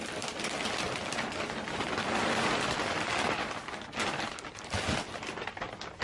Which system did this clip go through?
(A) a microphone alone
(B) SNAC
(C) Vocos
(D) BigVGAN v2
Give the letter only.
A